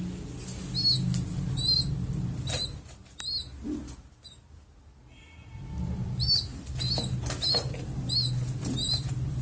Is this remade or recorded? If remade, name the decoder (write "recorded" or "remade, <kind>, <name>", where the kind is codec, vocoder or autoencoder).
recorded